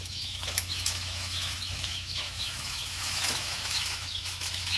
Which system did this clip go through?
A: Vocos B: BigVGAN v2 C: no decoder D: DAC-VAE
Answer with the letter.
D